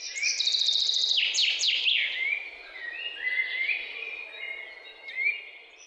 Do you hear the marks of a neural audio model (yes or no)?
no